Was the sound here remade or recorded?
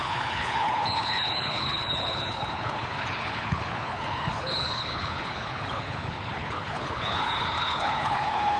remade